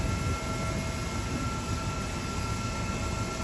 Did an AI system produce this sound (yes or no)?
no